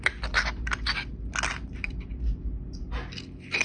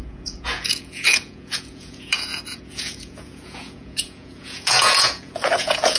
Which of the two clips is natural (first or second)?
first